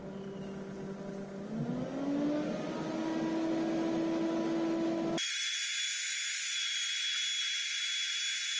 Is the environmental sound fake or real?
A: real